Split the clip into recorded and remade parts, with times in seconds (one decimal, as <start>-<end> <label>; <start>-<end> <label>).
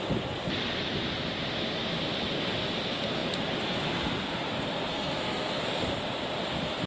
0.0-4.9 recorded; 4.9-5.6 remade; 5.6-6.9 recorded